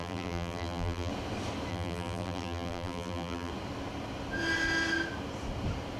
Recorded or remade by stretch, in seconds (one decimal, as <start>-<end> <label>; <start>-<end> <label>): 0.0-1.1 remade; 1.1-1.7 recorded; 1.7-3.5 remade; 3.5-6.0 recorded